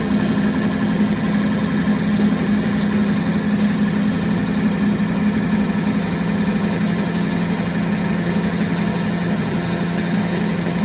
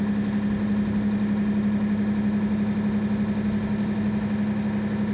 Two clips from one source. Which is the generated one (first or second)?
first